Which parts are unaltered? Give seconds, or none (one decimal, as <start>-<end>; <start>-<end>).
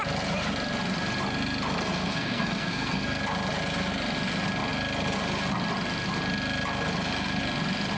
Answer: 0.0-2.0; 3.2-8.0